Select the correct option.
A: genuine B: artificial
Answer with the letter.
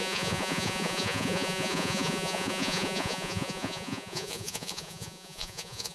B